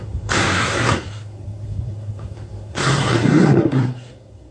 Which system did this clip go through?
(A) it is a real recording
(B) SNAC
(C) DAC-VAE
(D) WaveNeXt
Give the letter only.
B